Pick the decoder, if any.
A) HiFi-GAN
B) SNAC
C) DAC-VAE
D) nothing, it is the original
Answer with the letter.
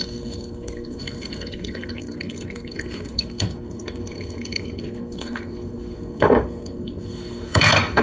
B